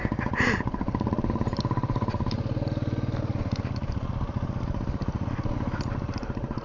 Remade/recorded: recorded